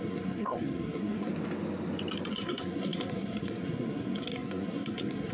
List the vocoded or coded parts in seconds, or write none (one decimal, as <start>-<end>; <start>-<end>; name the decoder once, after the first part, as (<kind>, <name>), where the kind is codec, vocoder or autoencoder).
0.0-1.3 (codec, SNAC); 2.3-5.3